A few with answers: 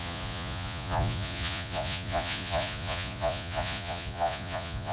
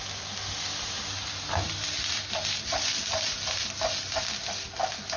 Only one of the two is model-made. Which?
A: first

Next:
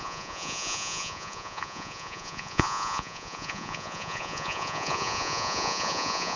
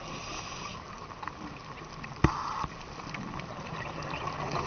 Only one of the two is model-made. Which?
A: first